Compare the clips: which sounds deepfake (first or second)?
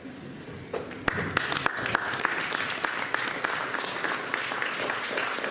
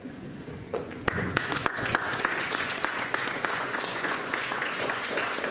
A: second